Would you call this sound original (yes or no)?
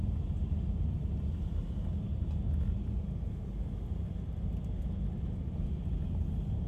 yes